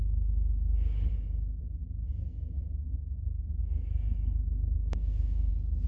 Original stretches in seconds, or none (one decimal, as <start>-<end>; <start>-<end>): 0.0-2.0; 5.5-5.9